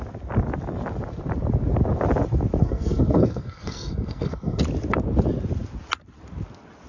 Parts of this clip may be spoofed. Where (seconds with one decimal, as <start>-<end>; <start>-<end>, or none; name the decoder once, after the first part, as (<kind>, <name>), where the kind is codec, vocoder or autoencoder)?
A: 2.6-4.6 (codec, SNAC)